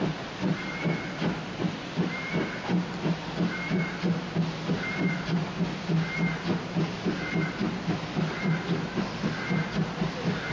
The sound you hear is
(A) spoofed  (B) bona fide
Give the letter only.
B